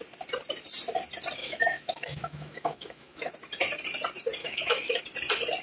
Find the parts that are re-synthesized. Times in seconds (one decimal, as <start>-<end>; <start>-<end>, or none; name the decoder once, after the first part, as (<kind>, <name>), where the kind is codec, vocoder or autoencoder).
1.4-3.3 (autoencoder, DAC-VAE); 4.4-5.0